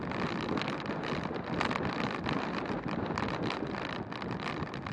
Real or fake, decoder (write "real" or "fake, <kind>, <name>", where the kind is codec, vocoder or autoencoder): real